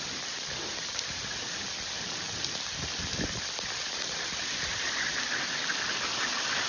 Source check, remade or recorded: recorded